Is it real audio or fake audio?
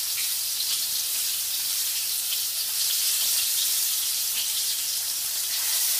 fake